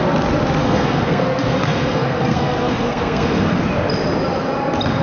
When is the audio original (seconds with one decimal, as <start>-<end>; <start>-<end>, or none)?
0.0-0.6; 3.6-5.0